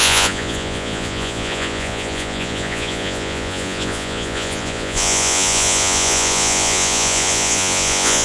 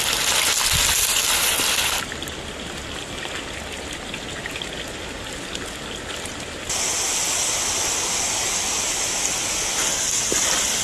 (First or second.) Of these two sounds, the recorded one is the second